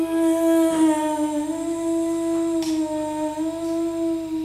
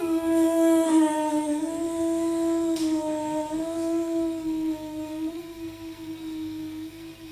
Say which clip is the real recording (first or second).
first